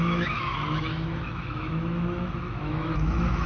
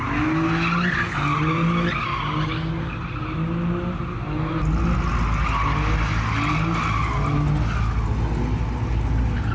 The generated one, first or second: first